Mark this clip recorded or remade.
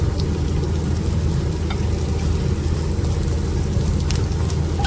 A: recorded